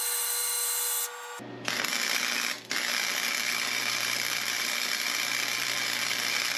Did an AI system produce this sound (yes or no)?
no